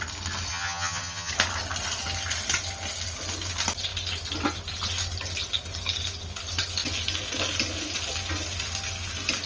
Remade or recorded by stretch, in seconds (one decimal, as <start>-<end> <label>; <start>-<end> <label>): 0.0-0.5 recorded; 0.5-1.3 remade; 1.3-9.5 recorded